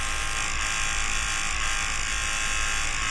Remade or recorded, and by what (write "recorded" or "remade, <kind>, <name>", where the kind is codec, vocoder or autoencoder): recorded